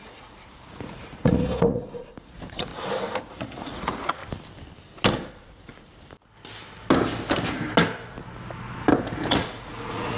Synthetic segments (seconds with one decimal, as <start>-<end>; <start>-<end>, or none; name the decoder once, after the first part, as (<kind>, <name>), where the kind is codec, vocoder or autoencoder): 0.0-2.7 (vocoder, Vocos); 3.2-4.2; 5.3-5.7; 9.3-10.2